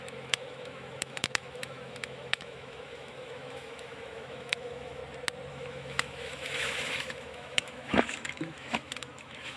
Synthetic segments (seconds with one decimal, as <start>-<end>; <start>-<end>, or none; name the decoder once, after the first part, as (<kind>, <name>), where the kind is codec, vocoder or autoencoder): 0.0-5.0 (autoencoder, DAC-VAE); 5.5-9.6

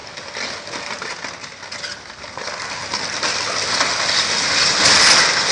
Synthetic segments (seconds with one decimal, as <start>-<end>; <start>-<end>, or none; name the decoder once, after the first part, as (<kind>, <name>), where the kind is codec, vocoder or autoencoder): none

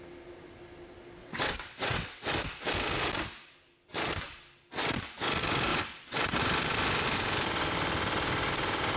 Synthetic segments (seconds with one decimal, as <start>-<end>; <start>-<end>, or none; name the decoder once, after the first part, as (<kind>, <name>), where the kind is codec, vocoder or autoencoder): 1.2-2.3 (vocoder, WaveNeXt); 5.7-6.4